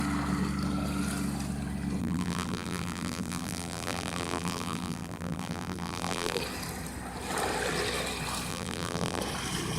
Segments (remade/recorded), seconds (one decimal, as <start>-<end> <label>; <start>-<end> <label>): 0.0-2.0 recorded; 2.0-6.4 remade; 6.4-8.5 recorded; 8.5-9.2 remade; 9.2-9.8 recorded